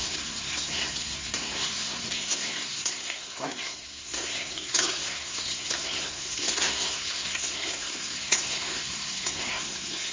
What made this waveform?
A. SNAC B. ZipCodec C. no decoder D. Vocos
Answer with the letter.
A